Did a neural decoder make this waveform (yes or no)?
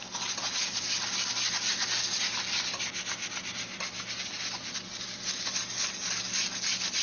no